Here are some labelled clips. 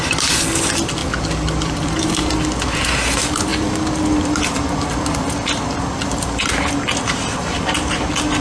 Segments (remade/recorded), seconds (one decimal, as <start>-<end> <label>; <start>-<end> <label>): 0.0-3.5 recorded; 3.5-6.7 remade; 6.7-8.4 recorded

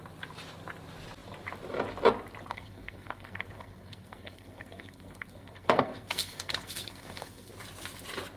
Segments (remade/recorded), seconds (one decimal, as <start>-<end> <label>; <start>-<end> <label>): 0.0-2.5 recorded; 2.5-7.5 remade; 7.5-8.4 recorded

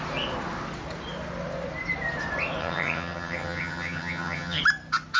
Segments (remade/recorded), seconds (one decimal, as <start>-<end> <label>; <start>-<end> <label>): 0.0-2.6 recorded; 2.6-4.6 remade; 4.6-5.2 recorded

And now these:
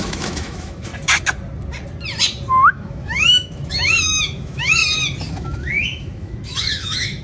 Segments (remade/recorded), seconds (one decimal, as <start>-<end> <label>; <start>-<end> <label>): 0.0-0.9 remade; 0.9-2.5 recorded; 2.5-4.8 remade; 4.8-5.3 recorded; 5.3-7.2 remade

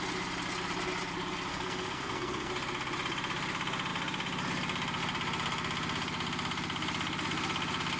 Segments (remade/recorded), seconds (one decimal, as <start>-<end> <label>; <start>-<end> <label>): 0.0-1.5 recorded; 1.5-2.5 remade; 2.5-8.0 recorded

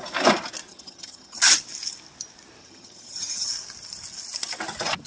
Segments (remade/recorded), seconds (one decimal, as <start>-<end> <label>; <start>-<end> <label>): 0.0-0.7 recorded; 0.7-1.4 remade; 1.4-2.6 recorded; 2.6-3.5 remade; 3.5-5.1 recorded

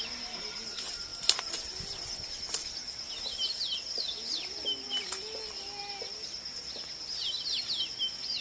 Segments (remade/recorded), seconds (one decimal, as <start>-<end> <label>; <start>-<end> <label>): 0.0-8.4 recorded

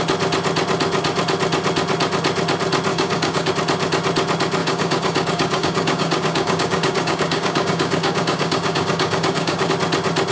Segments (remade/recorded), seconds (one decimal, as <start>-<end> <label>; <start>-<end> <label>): 0.0-2.9 recorded; 2.9-3.5 remade; 3.5-4.6 recorded; 4.6-9.7 remade; 9.7-10.3 recorded